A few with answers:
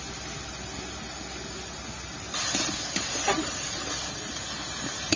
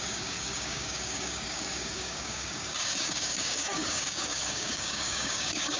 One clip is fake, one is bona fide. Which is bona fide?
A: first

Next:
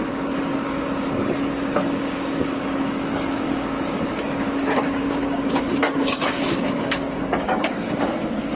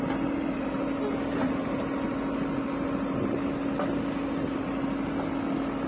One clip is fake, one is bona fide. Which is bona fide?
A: second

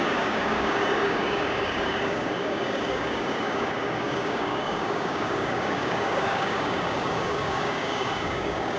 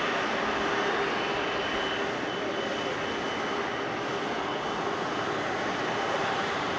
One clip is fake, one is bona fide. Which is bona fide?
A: second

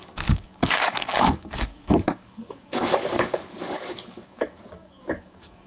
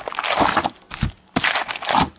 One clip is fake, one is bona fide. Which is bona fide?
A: second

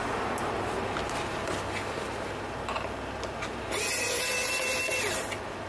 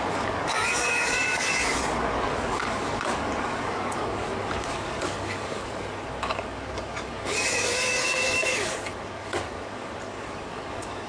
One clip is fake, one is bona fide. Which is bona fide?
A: first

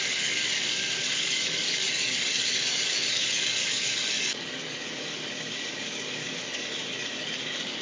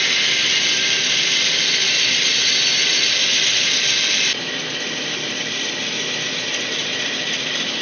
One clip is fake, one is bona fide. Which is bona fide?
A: second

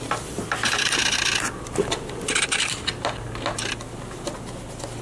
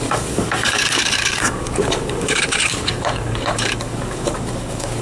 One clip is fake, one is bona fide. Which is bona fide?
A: first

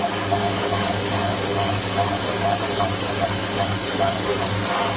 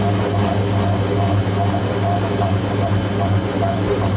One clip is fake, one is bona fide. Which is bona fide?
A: second